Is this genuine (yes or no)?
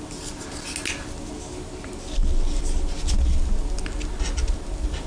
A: yes